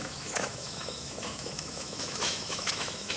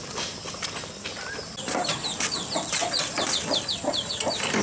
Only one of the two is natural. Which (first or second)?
second